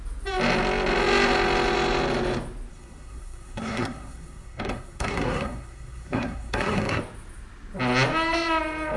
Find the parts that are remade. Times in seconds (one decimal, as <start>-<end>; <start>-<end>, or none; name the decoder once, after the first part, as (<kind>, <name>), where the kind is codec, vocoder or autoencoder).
2.7-7.0 (codec, SNAC)